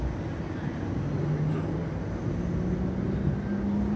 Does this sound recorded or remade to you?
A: recorded